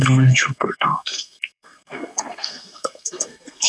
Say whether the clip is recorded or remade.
remade